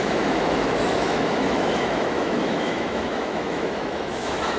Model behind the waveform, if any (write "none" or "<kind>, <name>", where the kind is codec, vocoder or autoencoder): autoencoder, DAC-VAE